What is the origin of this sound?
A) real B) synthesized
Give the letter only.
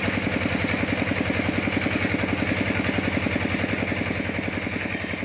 A